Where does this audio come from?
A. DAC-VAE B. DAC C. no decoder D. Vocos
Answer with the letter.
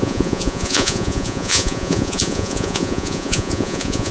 D